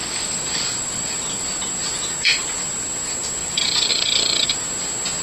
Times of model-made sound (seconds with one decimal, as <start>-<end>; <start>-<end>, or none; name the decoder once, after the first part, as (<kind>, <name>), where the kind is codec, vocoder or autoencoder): 0.0-1.4 (vocoder, BigVGAN v2); 3.4-4.5